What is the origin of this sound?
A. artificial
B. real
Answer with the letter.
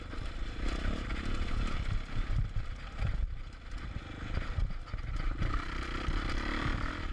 B